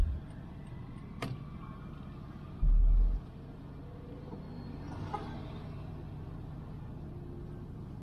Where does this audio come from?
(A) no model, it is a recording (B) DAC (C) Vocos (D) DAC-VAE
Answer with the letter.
A